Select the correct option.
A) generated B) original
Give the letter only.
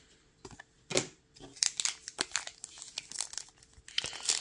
B